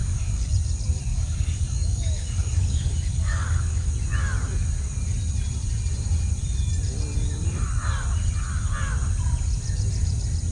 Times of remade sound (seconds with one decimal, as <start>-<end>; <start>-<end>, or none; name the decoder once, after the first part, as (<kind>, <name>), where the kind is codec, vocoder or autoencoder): 0.0-0.5 (codec, DAC); 1.1-3.9